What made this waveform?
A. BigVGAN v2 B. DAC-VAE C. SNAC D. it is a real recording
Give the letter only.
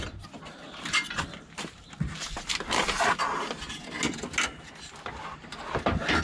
D